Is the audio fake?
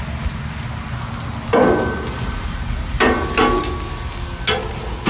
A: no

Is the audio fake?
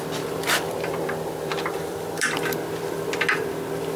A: yes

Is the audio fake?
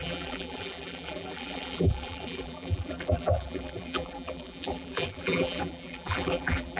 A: yes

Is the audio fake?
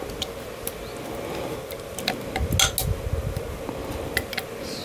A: no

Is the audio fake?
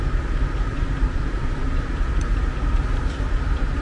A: yes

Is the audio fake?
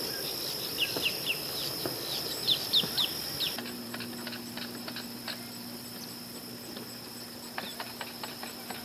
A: yes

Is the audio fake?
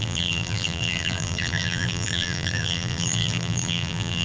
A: yes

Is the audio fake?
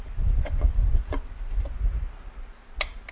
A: no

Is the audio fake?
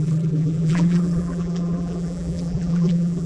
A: yes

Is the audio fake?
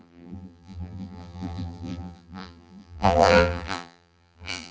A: yes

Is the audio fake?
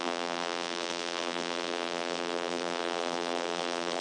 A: yes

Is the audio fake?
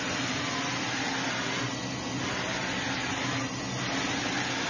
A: no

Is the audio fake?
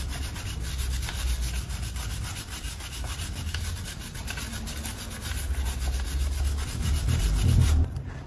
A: no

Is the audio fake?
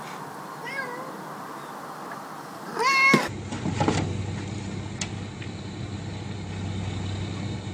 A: no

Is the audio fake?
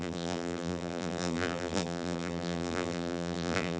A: yes